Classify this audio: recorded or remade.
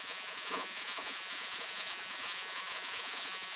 remade